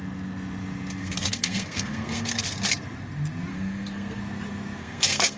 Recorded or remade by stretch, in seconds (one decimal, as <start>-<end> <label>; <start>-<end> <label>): 0.0-1.0 recorded; 1.0-2.4 remade; 2.4-3.5 recorded; 3.5-4.2 remade; 4.2-4.8 recorded; 4.8-5.4 remade